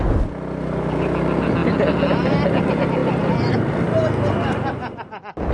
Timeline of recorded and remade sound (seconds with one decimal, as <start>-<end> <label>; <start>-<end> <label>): 0.0-5.5 recorded